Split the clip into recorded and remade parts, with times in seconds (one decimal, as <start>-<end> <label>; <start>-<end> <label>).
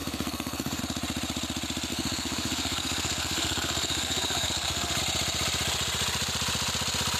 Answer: 0.0-0.8 remade; 0.8-1.9 recorded; 1.9-5.0 remade; 5.0-7.2 recorded